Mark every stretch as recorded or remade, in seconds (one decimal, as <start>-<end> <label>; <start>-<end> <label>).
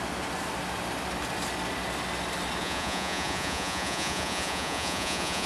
0.0-2.6 recorded; 2.6-5.5 remade